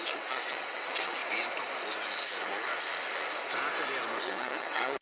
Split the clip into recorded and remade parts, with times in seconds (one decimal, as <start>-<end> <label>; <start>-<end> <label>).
0.0-1.2 remade; 1.2-4.2 recorded; 4.2-5.0 remade